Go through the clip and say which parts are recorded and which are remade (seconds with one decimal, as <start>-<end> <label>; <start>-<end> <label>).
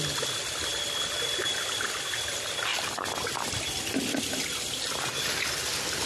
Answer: 0.0-6.1 recorded